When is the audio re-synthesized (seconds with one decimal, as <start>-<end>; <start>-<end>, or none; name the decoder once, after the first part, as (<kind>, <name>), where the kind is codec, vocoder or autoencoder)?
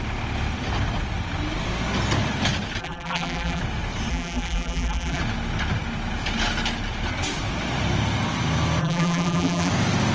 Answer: 2.8-3.6 (vocoder, BigVGAN v2); 4.1-5.2; 8.8-9.7